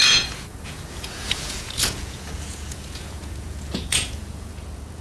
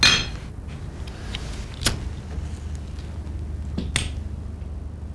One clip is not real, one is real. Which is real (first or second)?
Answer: second